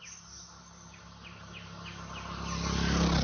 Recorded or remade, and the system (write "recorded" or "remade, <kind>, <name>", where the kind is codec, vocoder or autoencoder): recorded